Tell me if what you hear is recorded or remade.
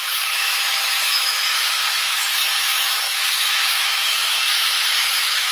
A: remade